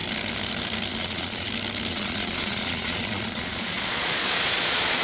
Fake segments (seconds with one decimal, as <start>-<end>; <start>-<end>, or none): 0.9-1.5; 1.9-5.0